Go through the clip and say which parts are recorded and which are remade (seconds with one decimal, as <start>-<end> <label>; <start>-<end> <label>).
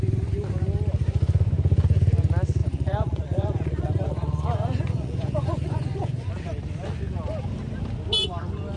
0.0-2.6 recorded; 2.6-6.3 remade; 6.3-8.8 recorded